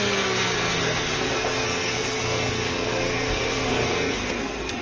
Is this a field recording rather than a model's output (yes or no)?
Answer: no